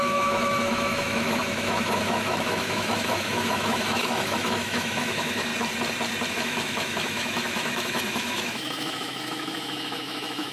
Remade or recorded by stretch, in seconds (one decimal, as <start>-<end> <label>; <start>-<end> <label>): 0.0-5.5 remade; 5.5-6.3 recorded; 6.3-10.5 remade